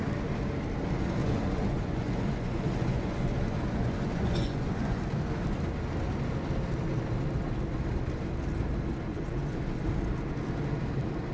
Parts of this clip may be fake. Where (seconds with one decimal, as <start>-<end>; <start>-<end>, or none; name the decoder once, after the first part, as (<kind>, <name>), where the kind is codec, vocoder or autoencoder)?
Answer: 1.2-5.0 (vocoder, Vocos); 9.1-9.6